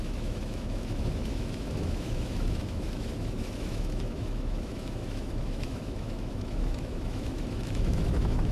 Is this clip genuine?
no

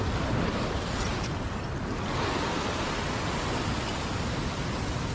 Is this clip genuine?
yes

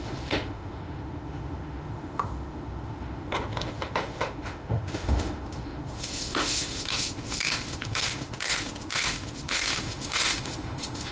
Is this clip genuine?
no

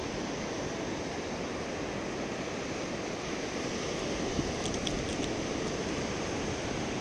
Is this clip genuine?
yes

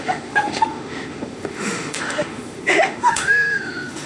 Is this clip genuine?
no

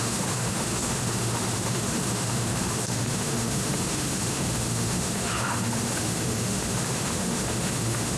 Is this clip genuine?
no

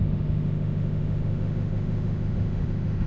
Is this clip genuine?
no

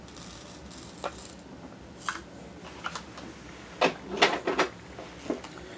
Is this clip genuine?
yes